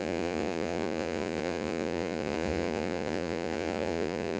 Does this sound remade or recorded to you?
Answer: remade